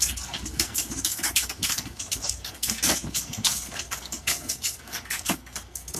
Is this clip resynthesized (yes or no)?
yes